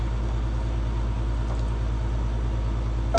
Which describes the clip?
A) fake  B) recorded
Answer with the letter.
B